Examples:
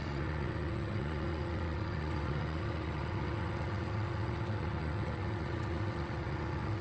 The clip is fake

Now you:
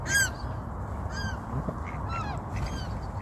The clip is real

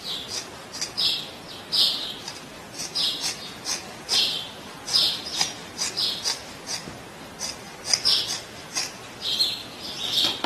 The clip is real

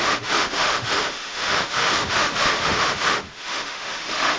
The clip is fake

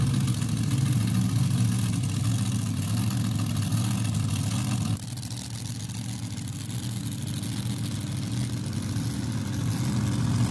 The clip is real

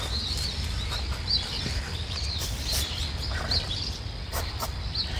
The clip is real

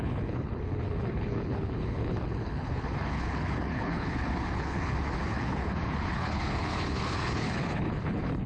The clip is fake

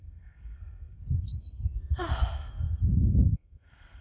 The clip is fake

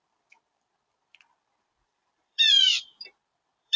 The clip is fake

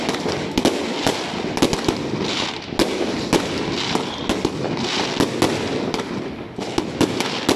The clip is real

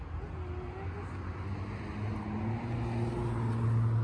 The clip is real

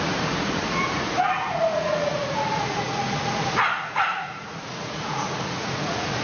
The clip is fake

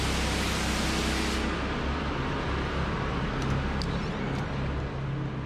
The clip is real